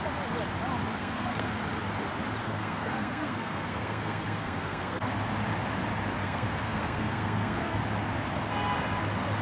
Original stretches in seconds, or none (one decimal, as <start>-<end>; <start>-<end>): 0.0-0.9; 1.5-2.4; 5.1-6.2; 7.8-9.4